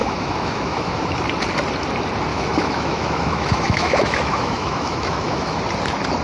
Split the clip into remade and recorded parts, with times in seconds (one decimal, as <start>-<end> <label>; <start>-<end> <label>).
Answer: 0.0-1.2 remade; 1.2-2.3 recorded; 2.3-5.6 remade; 5.6-6.2 recorded